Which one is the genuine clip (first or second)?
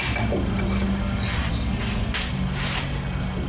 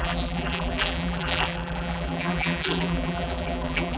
first